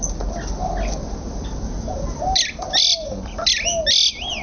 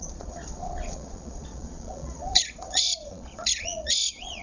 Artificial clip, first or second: second